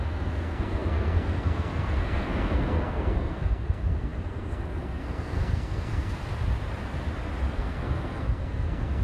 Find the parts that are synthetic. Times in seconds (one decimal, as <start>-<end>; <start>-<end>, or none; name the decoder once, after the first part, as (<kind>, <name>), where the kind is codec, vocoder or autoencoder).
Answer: 0.0-6.2 (codec, SNAC); 7.5-9.0